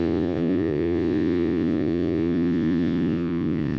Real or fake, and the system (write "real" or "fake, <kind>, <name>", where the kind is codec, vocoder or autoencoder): fake, vocoder, Vocos